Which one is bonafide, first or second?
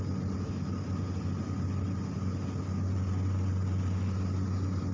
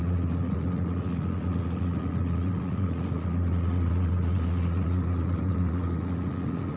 first